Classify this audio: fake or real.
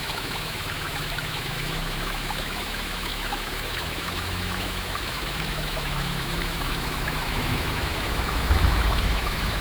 fake